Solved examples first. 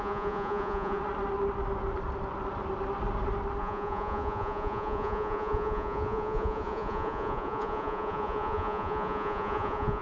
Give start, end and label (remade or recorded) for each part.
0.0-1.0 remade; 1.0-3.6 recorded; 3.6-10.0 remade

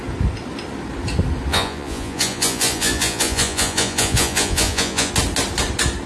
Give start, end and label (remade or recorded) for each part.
0.0-1.5 recorded; 1.5-5.1 remade; 5.1-6.1 recorded